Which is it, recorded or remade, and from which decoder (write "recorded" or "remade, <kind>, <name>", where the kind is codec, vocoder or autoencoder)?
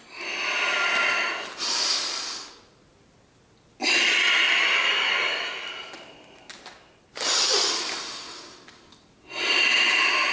recorded